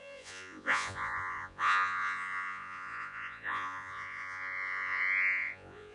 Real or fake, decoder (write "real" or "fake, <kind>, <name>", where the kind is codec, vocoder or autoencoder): fake, vocoder, Vocos